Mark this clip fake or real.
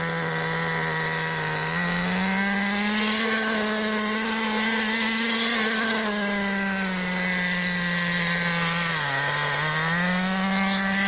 real